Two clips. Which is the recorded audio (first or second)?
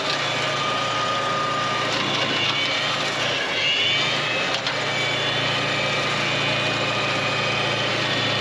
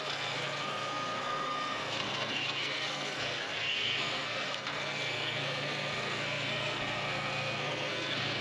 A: first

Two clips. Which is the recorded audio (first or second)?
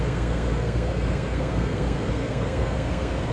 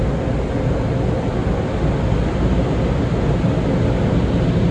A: second